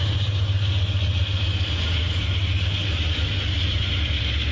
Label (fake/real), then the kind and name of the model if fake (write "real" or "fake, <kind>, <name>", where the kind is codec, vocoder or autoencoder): real